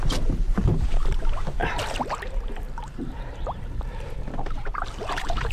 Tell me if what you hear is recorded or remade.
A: remade